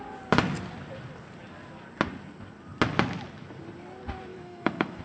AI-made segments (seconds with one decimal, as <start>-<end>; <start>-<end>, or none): 4.3-5.0